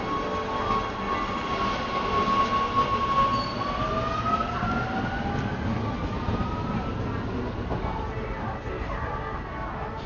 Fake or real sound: real